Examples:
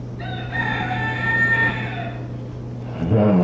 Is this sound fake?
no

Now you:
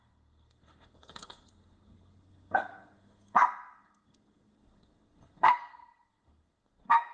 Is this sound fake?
yes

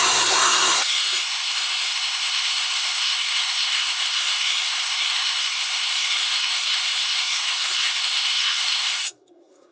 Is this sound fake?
yes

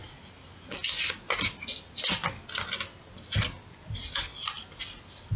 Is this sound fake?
no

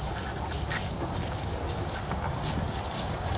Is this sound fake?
no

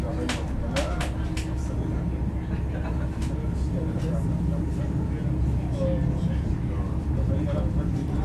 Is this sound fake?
no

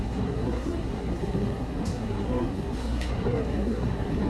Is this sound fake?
yes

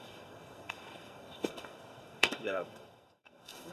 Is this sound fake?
yes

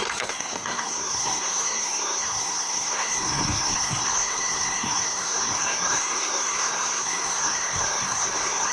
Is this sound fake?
yes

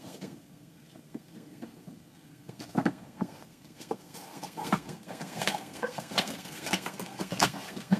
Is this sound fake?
yes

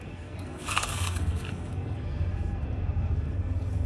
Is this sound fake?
yes